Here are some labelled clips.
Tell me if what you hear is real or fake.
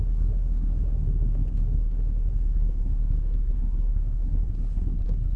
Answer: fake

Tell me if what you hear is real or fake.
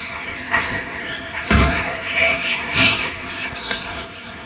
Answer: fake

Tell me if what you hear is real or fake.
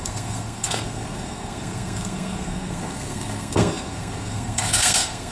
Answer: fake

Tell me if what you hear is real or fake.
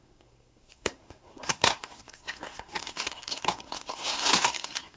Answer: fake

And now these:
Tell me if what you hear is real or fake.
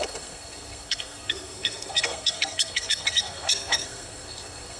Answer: fake